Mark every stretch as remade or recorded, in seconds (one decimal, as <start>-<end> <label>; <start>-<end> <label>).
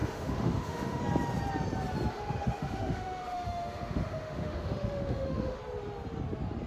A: 0.0-1.0 remade; 1.0-2.1 recorded; 2.1-5.6 remade; 5.6-6.7 recorded